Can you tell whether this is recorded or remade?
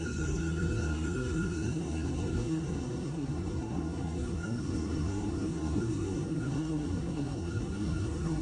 remade